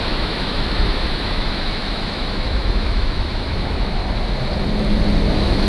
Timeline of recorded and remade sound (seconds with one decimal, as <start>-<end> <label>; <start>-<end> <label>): 0.0-4.0 remade; 4.0-5.3 recorded; 5.3-5.7 remade